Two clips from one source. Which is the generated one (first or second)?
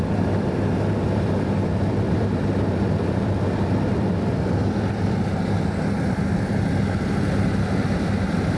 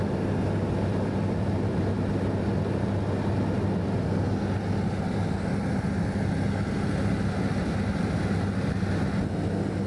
first